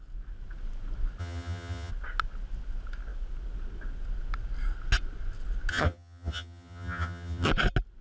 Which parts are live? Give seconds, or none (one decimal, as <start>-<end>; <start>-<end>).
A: 0.0-1.2; 1.9-5.7; 7.5-8.0